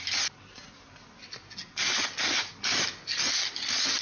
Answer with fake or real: real